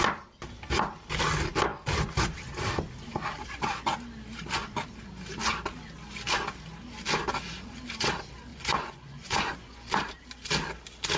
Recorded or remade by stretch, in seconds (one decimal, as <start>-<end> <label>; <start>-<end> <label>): 0.0-8.5 recorded; 8.5-9.9 remade; 9.9-11.2 recorded